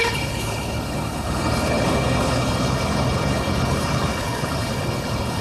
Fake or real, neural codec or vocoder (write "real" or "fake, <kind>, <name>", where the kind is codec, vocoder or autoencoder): fake, codec, HILCodec